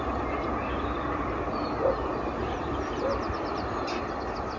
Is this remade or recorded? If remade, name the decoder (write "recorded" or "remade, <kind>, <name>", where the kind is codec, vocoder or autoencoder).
recorded